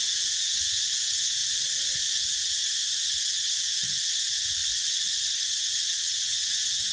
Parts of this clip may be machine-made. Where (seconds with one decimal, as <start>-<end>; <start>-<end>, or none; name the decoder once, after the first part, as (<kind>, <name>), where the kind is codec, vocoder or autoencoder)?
0.0-1.4 (vocoder, Vocos); 2.1-4.6; 5.5-6.9